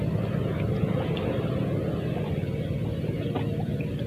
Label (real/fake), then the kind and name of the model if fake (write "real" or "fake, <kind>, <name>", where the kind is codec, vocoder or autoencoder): real